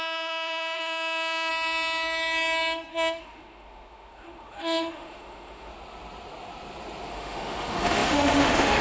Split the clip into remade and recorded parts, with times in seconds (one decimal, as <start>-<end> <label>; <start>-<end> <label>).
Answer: 0.0-1.5 remade; 1.5-2.9 recorded; 2.9-5.7 remade; 5.7-7.1 recorded; 7.1-8.8 remade